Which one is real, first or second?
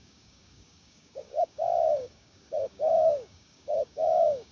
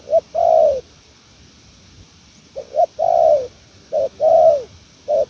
second